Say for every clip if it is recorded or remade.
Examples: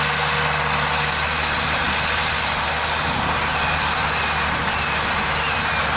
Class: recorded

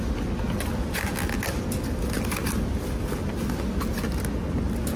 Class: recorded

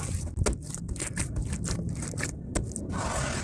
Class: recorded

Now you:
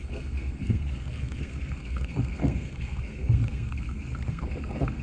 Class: remade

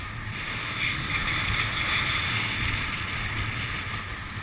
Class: recorded